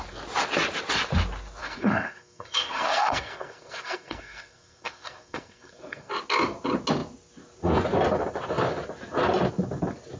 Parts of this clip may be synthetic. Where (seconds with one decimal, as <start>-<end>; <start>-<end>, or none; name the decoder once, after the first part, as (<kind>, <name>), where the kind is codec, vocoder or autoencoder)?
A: 1.6-6.1 (codec, SNAC)